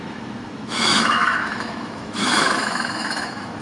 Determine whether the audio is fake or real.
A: fake